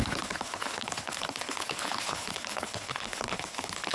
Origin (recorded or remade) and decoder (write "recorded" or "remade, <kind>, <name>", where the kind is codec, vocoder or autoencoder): remade, codec, HILCodec